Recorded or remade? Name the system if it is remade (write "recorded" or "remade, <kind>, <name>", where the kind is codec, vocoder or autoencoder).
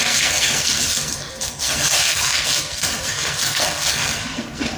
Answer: remade, codec, SNAC